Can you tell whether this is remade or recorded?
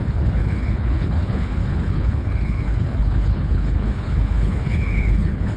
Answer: remade